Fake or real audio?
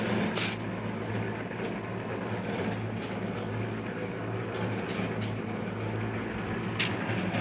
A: real